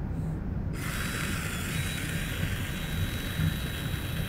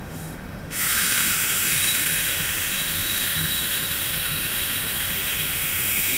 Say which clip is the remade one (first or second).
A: second